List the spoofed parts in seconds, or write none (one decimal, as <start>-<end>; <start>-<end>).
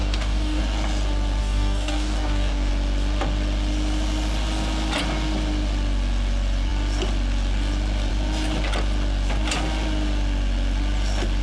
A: 0.0-0.6; 1.4-2.7